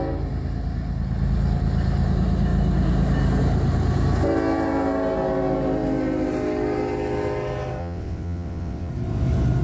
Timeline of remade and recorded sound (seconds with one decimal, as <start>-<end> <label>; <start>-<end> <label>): 0.0-7.8 recorded; 7.8-8.9 remade; 8.9-9.6 recorded

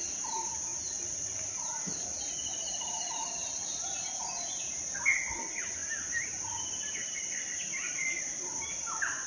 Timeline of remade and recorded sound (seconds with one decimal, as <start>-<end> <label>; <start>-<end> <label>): 0.0-9.3 recorded

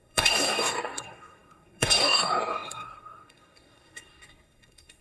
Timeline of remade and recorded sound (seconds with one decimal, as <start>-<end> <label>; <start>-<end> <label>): 0.0-5.0 remade